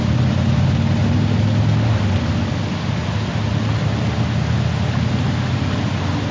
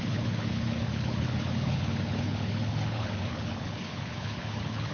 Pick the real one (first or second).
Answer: first